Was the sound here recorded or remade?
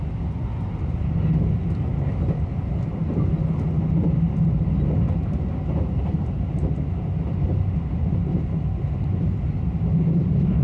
recorded